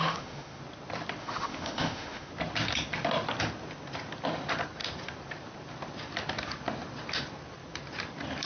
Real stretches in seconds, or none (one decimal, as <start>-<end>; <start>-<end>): 0.6-1.2; 2.3-8.5